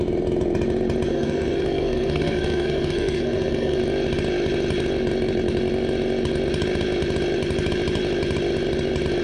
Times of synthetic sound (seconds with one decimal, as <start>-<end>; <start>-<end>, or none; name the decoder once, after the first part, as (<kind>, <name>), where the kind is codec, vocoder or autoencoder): 1.1-3.8 (codec, SNAC)